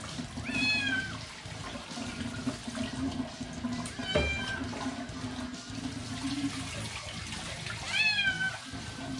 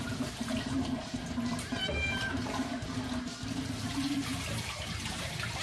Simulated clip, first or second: second